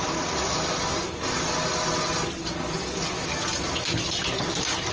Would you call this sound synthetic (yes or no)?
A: no